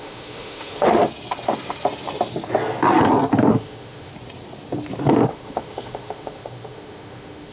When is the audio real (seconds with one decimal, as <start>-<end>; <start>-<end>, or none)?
1.0-3.5; 4.1-5.3